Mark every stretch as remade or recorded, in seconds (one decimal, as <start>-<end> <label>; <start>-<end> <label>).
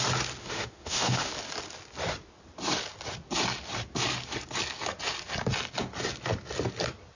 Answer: 0.0-0.4 recorded; 0.4-1.3 remade; 1.3-7.2 recorded